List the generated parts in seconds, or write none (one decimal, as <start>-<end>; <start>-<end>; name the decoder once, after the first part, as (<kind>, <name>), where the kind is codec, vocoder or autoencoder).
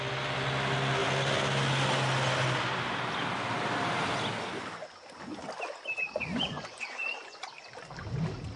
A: 6.0-7.4 (vocoder, Vocos)